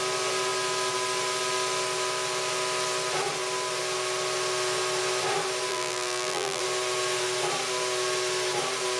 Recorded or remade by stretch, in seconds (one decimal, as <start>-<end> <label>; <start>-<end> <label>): 0.0-5.7 recorded; 5.7-6.6 remade; 6.6-9.0 recorded